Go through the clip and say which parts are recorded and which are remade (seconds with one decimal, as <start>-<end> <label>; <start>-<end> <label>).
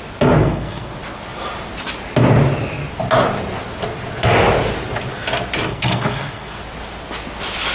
0.0-0.4 recorded; 0.4-0.9 remade; 0.9-5.7 recorded; 5.7-6.6 remade; 6.6-7.7 recorded